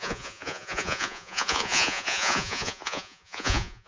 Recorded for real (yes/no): no